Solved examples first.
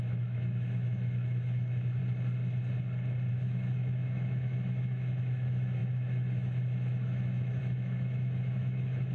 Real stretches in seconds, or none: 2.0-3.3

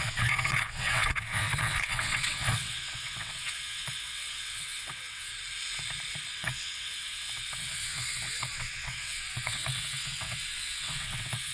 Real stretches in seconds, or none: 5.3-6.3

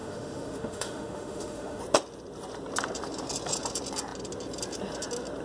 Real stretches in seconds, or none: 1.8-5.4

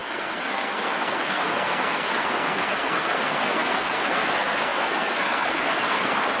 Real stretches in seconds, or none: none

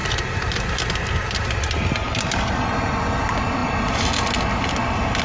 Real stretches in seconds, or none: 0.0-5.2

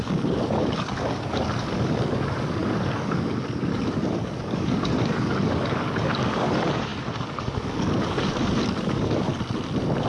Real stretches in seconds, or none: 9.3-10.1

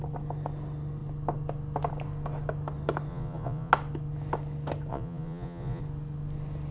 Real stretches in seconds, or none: 0.0-3.1; 3.7-4.9; 5.8-6.7

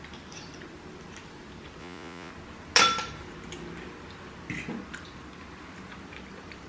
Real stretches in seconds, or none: 0.0-1.8; 2.3-6.7